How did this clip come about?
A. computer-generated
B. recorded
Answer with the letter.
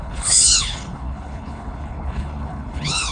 A